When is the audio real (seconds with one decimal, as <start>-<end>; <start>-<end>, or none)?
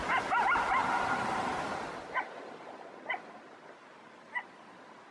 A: 0.0-5.1